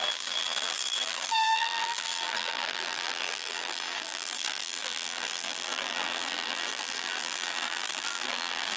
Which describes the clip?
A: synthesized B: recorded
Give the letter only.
A